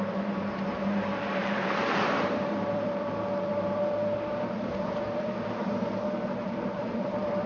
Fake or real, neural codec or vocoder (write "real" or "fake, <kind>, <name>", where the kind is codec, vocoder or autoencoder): fake, vocoder, BigVGAN v2